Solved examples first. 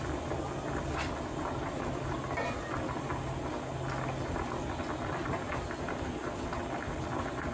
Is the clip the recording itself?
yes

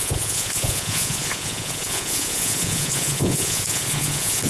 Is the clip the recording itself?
no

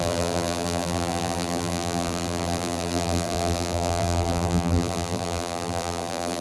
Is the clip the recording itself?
no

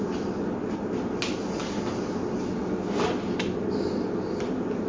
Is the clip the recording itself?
yes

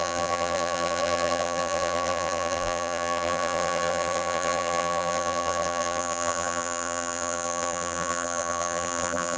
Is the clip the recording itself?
no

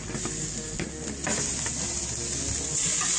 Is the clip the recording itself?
yes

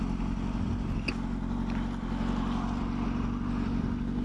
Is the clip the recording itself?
yes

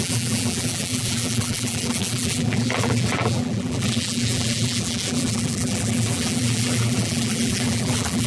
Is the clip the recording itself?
no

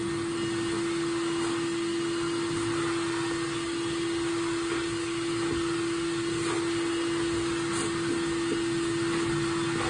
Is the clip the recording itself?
yes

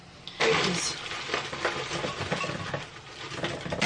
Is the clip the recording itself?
yes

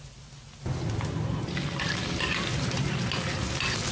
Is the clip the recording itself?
yes